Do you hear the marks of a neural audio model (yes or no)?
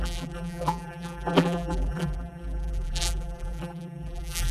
yes